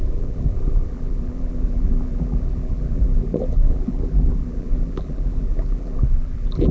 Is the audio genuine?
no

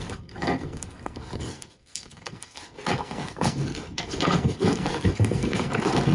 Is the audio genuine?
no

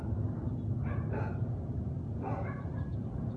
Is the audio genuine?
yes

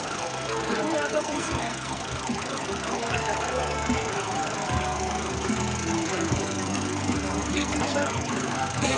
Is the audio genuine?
no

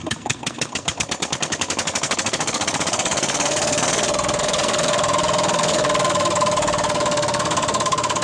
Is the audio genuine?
no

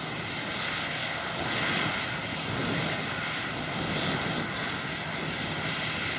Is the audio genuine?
yes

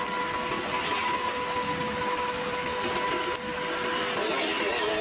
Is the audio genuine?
yes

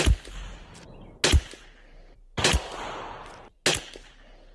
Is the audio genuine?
yes